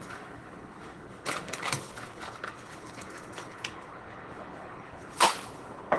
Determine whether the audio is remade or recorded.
remade